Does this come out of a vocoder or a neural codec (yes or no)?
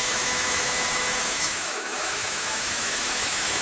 yes